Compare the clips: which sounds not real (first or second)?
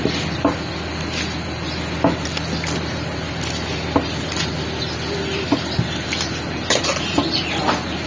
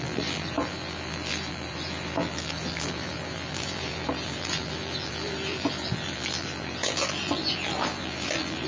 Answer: second